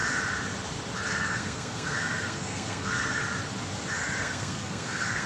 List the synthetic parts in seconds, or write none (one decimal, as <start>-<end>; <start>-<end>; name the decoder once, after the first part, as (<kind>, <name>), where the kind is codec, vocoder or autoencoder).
1.1-3.2 (codec, SNAC); 4.2-5.3